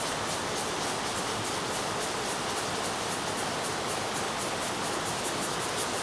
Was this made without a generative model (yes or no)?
yes